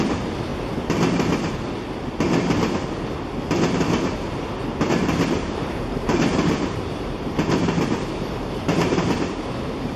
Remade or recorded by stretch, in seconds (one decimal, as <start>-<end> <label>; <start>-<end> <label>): 0.0-0.5 remade; 0.5-4.9 recorded; 4.9-10.0 remade